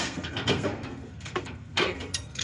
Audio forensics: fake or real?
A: fake